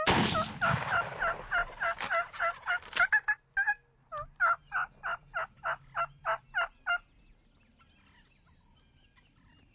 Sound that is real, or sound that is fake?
real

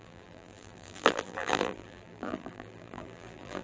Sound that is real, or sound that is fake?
fake